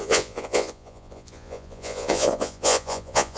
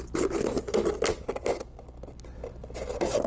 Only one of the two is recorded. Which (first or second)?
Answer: second